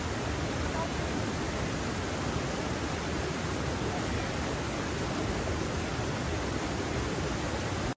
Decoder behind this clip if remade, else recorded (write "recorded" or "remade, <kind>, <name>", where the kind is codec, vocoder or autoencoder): recorded